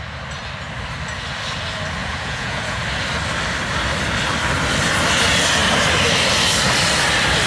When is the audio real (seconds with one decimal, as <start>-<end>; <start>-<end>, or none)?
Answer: 0.0-2.0; 2.8-7.5